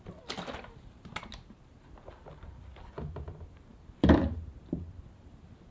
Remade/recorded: recorded